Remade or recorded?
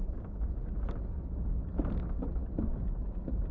recorded